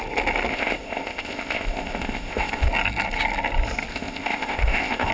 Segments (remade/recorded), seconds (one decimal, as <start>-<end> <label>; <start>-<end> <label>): 0.0-0.5 recorded; 0.5-2.7 remade; 2.7-3.9 recorded; 3.9-5.1 remade